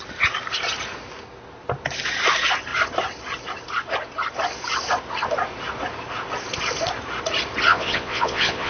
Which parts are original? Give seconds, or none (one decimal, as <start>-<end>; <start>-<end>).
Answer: 0.0-7.7